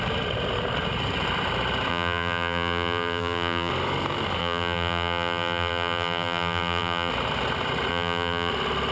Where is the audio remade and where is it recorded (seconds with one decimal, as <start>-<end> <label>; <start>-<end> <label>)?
0.0-1.9 recorded; 1.9-3.7 remade; 3.7-4.4 recorded; 4.4-7.1 remade; 7.1-7.9 recorded; 7.9-8.5 remade; 8.5-8.9 recorded